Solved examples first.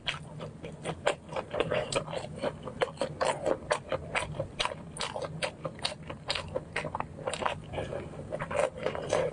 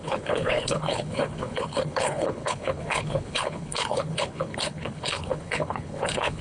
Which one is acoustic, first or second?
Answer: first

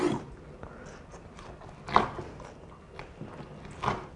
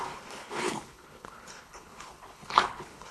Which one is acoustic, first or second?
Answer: first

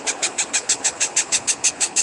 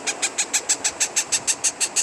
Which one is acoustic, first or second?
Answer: second